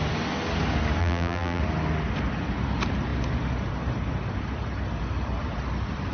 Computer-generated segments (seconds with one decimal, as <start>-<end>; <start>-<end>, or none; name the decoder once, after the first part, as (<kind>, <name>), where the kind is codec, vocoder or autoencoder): 1.0-1.6 (vocoder, BigVGAN v2)